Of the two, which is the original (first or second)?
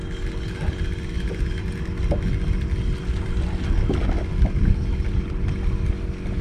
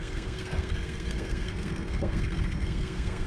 first